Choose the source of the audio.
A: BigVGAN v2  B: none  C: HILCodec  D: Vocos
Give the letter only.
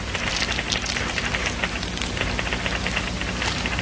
B